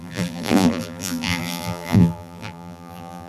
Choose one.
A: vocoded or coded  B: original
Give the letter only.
A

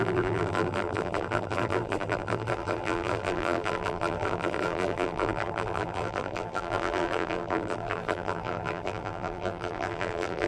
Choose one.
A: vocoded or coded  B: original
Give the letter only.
A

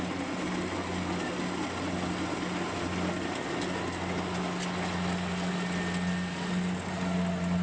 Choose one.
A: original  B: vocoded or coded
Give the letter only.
A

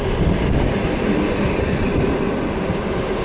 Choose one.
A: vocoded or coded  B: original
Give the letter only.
B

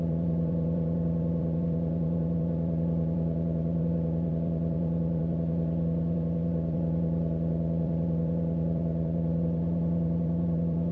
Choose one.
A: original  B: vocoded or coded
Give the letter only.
B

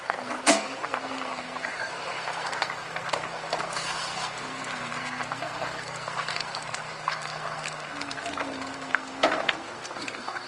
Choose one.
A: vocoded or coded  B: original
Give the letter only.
A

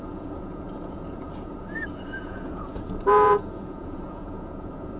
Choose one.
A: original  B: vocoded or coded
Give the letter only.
B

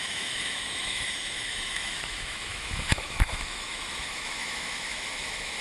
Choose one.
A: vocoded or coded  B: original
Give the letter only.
A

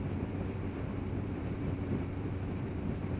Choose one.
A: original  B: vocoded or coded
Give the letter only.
B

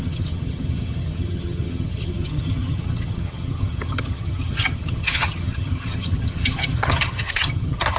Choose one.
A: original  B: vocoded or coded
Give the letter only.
B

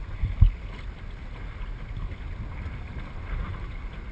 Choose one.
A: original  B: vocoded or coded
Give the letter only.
A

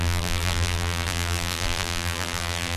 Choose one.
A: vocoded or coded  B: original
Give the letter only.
A